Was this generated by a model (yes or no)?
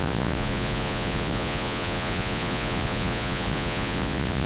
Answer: yes